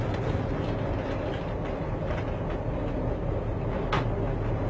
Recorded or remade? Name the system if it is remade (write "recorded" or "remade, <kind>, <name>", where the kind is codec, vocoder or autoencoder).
recorded